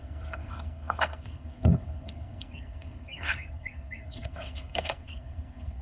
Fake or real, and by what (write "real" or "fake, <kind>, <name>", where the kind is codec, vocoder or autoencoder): fake, codec, SNAC